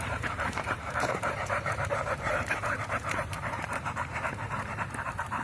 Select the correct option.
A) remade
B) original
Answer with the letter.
A